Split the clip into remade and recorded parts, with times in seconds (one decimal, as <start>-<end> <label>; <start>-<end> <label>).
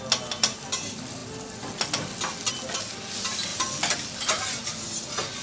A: 0.0-5.4 recorded